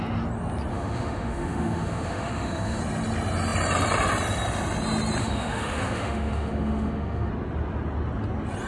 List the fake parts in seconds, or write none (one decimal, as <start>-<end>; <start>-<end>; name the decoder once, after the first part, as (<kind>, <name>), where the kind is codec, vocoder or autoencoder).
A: 0.7-2.8 (autoencoder, DAC-VAE); 5.2-7.3